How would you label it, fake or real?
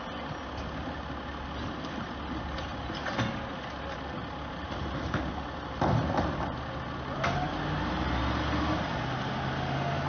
real